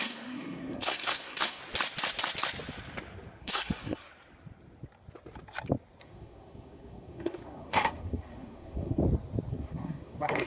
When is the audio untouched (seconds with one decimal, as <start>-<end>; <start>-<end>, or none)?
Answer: 1.6-3.4; 4.1-6.0; 9.0-9.5